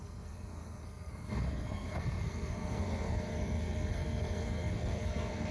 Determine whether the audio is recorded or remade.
remade